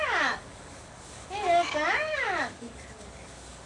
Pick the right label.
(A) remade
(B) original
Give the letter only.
A